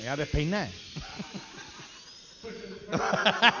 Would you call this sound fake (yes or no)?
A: no